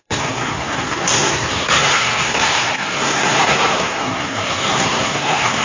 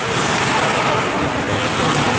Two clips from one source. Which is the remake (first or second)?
first